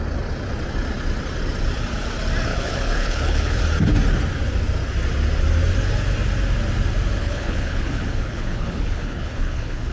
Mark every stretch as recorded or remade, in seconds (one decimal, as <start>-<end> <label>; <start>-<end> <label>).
0.0-2.5 recorded; 2.5-3.6 remade; 3.6-7.2 recorded; 7.2-9.9 remade